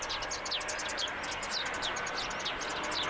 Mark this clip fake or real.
real